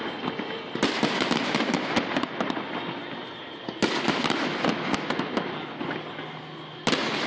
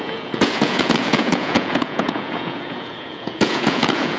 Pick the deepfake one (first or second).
second